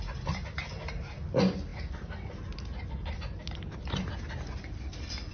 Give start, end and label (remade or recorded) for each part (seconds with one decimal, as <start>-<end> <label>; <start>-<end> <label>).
0.0-5.3 recorded